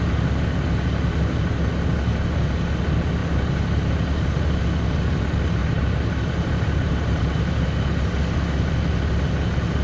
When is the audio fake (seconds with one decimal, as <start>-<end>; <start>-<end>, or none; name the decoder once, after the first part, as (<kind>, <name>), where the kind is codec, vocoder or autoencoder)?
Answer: 3.2-4.6 (vocoder, BigVGAN v2); 5.6-7.2